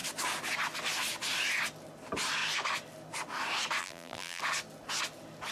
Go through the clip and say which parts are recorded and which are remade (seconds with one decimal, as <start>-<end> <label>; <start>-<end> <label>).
0.0-3.8 recorded; 3.8-4.4 remade; 4.4-5.5 recorded

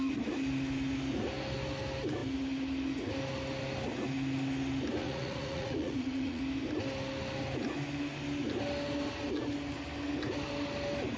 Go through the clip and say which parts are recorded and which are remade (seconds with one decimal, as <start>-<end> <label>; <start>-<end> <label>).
0.0-5.0 recorded; 5.0-6.4 remade; 6.4-11.2 recorded

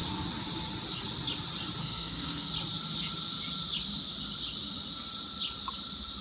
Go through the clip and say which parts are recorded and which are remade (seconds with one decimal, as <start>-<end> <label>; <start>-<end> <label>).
0.0-1.8 recorded; 1.8-2.5 remade; 2.5-6.2 recorded

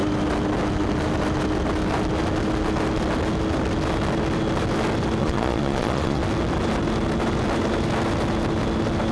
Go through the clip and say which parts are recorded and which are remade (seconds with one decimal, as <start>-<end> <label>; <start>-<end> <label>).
0.0-5.2 recorded; 5.2-6.2 remade; 6.2-9.1 recorded